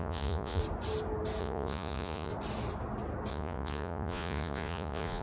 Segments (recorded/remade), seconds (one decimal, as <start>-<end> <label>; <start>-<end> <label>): 0.0-0.6 remade; 0.6-1.4 recorded; 1.4-2.3 remade; 2.3-3.3 recorded; 3.3-5.2 remade